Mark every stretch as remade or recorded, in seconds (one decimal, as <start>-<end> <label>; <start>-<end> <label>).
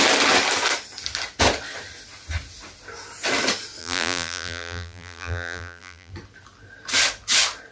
0.0-3.8 recorded; 3.8-6.1 remade; 6.1-7.7 recorded